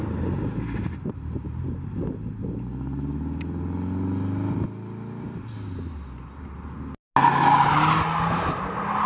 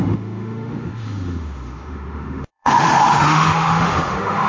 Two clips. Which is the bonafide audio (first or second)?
first